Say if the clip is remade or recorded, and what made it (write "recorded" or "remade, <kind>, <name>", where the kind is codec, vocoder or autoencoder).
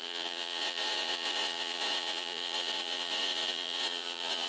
remade, vocoder, Vocos